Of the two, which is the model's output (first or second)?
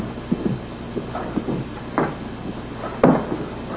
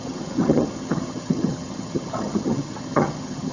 second